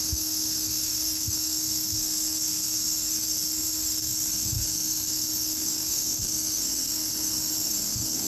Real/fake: fake